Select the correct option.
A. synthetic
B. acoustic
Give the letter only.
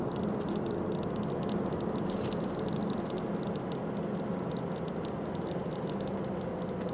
B